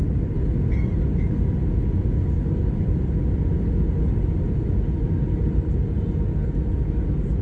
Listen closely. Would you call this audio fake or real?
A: real